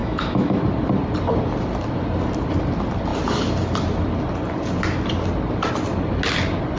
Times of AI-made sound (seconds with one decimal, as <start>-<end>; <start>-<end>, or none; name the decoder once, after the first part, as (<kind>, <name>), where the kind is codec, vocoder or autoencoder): 0.0-0.6 (autoencoder, DAC-VAE)